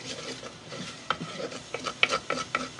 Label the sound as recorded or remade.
recorded